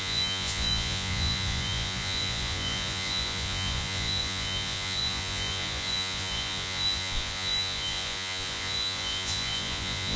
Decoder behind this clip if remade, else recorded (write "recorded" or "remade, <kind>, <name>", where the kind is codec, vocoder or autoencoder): remade, vocoder, Vocos